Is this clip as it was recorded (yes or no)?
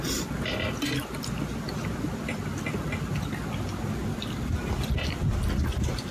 yes